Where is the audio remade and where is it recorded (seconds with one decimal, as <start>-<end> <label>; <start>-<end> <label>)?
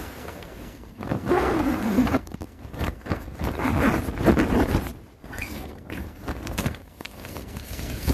0.0-3.7 remade; 3.7-5.2 recorded; 5.2-8.1 remade